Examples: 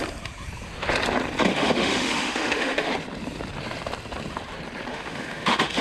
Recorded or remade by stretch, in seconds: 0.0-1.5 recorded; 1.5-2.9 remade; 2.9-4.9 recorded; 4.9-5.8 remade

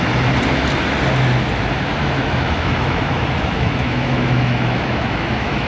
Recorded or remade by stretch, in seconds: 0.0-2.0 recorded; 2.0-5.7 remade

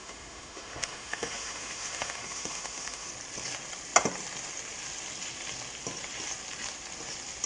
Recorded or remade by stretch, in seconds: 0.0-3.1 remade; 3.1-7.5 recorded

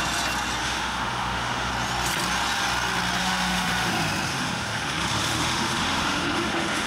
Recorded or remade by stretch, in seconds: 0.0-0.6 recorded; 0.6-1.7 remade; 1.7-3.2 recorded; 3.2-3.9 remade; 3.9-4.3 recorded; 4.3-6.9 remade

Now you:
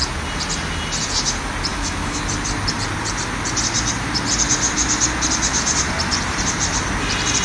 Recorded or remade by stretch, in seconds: 0.0-1.7 recorded; 1.7-2.2 remade; 2.2-7.4 recorded

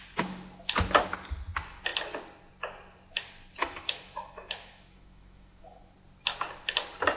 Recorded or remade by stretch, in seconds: 0.0-3.6 recorded; 3.6-5.8 remade; 5.8-7.2 recorded